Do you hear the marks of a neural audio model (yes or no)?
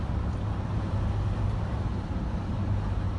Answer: no